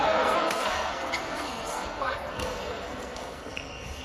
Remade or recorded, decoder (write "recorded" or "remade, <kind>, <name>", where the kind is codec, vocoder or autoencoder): remade, codec, SNAC